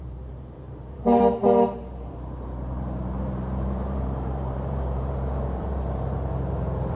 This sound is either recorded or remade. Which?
remade